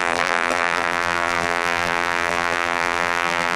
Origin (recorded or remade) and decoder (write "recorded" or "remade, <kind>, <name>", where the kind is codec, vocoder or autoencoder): remade, vocoder, BigVGAN v2